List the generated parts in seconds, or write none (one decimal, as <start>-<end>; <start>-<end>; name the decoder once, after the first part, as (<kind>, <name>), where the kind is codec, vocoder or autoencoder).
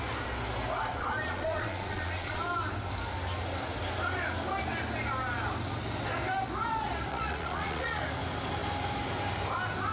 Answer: 0.9-2.4 (vocoder, Vocos); 7.1-8.0